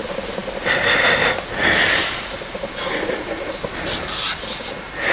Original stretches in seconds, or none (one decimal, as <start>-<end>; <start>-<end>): 0.0-5.1

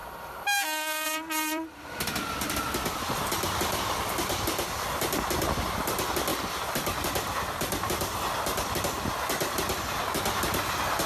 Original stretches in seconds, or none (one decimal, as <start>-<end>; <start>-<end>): 4.9-6.3; 8.8-11.1